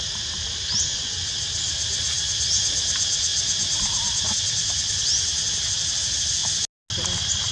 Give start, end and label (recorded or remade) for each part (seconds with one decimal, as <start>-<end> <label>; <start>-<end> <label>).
0.0-7.5 recorded